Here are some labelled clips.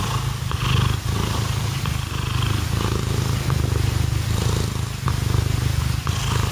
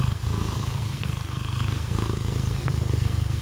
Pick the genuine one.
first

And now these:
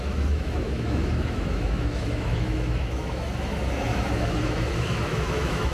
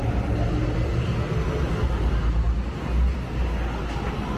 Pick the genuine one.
second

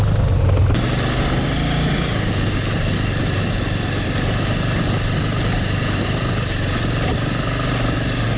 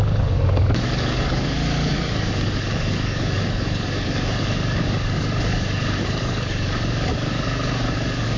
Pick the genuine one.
first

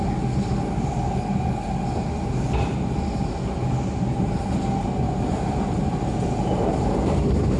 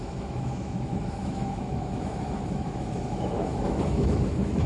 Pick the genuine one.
first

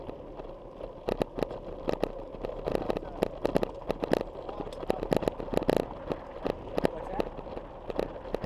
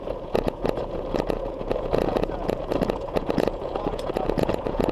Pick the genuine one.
first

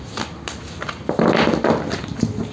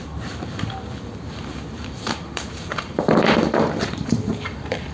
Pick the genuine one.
first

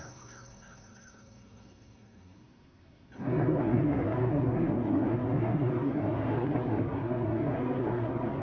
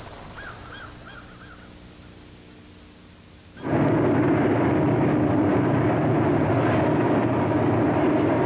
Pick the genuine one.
second